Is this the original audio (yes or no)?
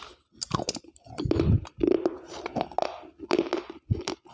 yes